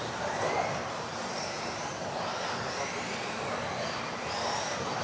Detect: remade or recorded recorded